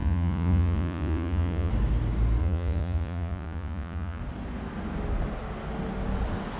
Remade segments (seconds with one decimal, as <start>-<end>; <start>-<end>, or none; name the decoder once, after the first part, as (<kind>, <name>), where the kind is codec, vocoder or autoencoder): 0.0-1.7 (vocoder, Vocos); 2.4-4.2